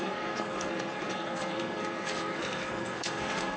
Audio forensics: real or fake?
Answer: fake